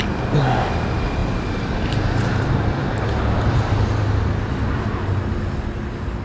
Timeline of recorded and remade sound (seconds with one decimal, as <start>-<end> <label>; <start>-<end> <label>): 0.0-6.2 recorded